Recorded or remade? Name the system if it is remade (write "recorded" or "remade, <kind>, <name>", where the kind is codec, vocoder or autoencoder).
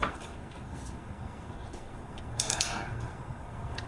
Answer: remade, codec, SNAC